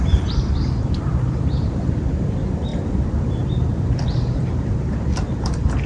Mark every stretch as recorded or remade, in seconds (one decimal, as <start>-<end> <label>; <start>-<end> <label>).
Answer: 0.0-2.7 remade; 2.7-5.9 recorded